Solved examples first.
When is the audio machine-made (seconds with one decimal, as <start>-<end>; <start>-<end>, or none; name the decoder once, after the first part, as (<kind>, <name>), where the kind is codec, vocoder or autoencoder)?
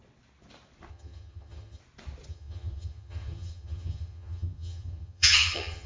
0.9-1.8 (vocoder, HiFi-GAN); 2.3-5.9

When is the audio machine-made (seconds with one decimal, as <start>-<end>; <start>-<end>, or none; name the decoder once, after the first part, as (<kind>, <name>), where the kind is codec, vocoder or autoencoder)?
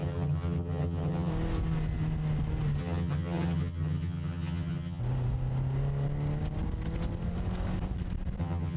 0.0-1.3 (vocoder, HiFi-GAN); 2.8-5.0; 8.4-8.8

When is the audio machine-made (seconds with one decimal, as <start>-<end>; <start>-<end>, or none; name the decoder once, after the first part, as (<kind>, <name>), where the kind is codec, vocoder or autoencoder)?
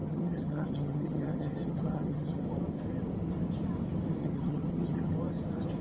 0.0-2.4 (vocoder, HiFi-GAN); 4.2-5.1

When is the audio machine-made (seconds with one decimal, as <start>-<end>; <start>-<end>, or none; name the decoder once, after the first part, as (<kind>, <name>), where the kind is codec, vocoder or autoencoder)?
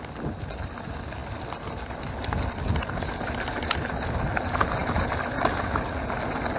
none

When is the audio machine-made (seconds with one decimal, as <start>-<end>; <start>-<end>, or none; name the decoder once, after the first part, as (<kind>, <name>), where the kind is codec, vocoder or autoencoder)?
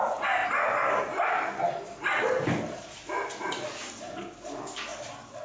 none